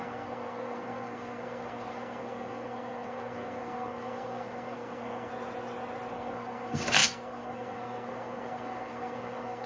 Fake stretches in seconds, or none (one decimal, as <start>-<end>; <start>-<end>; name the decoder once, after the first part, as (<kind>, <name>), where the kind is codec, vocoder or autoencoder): 0.0-5.3 (codec, SNAC); 6.1-9.7